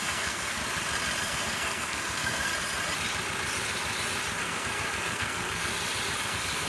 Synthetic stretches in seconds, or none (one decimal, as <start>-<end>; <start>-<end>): 0.0-0.6; 1.2-2.5; 4.4-5.7; 6.2-6.7